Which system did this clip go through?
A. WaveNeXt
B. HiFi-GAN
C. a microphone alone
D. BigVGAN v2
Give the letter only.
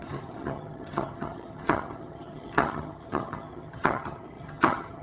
B